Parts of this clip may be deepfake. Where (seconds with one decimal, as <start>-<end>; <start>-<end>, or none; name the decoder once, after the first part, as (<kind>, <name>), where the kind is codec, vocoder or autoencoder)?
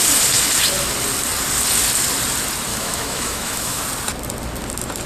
2.7-3.8 (autoencoder, DAC-VAE)